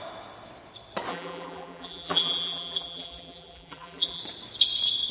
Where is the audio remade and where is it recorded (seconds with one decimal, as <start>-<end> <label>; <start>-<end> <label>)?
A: 0.0-1.1 recorded; 1.1-4.2 remade; 4.2-5.1 recorded